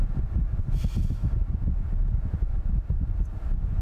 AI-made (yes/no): no